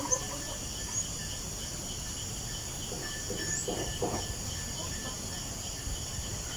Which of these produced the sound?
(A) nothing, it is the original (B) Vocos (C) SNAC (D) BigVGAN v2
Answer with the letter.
A